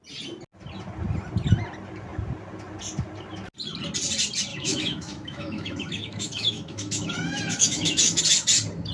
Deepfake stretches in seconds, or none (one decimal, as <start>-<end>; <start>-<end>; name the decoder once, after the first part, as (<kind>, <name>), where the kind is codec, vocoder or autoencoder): 4.5-8.2 (autoencoder, DAC-VAE)

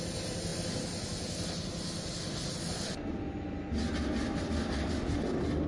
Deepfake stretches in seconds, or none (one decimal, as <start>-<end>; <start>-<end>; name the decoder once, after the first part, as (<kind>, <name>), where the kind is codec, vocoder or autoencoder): none

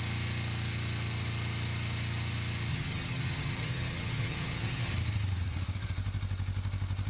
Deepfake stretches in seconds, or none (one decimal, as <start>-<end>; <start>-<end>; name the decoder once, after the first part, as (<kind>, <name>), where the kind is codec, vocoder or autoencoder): 2.7-4.9 (vocoder, HiFi-GAN)

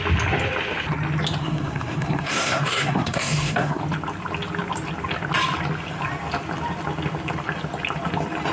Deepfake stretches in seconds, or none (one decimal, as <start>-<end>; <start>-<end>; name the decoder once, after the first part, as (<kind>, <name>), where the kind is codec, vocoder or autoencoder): 1.4-3.8 (codec, SNAC)